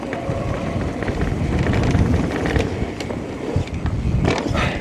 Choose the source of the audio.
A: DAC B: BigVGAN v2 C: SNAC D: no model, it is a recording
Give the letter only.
B